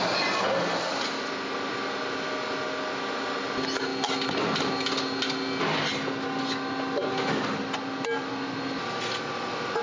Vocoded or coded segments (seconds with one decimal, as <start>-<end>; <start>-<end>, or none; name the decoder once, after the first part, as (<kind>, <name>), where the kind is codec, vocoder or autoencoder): none